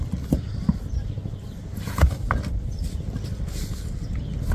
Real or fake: real